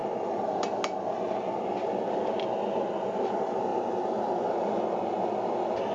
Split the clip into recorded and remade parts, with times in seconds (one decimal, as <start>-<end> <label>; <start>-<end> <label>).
0.0-5.9 recorded